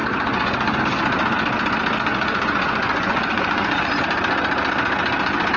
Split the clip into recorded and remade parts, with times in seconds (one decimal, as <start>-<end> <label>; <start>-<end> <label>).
0.0-0.8 remade; 0.8-2.1 recorded; 2.1-4.0 remade; 4.0-5.6 recorded